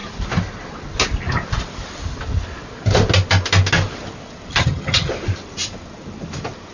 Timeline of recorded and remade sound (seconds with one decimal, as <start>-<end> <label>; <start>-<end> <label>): 0.0-4.5 recorded; 4.5-5.1 remade; 5.1-6.7 recorded